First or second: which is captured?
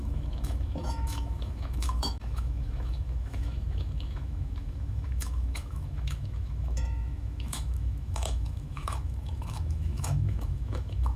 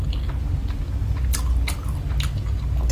second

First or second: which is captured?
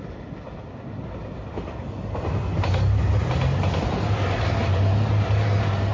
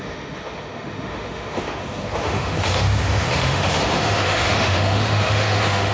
first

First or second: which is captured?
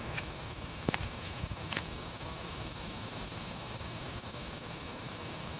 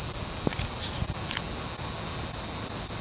second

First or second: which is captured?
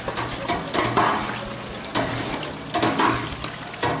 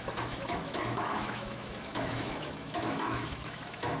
first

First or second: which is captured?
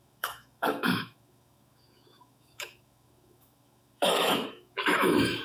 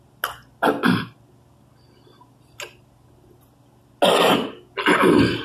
second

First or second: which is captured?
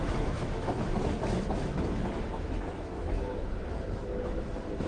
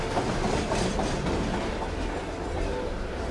second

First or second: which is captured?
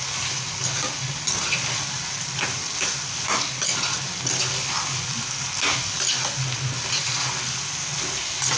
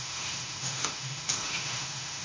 first